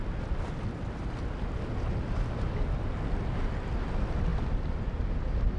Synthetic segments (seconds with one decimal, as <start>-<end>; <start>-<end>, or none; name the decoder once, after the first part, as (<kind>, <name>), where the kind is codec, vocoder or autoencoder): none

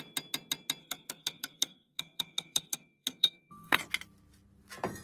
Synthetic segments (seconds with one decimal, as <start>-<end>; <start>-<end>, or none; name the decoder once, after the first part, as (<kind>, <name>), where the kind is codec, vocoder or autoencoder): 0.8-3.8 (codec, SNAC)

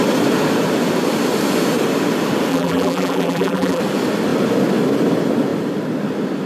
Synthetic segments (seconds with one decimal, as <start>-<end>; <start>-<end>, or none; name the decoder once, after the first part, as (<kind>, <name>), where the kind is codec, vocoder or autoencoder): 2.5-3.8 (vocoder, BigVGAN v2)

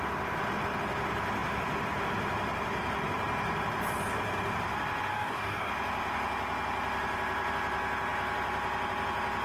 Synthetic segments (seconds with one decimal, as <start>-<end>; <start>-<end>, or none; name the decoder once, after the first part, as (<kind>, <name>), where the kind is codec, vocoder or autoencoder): 5.1-5.7 (codec, DAC)